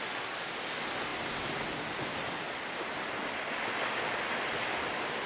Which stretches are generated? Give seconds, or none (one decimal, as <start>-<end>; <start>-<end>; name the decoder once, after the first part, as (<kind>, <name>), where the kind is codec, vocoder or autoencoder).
none